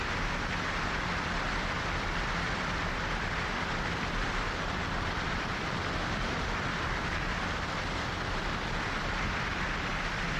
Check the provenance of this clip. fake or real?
fake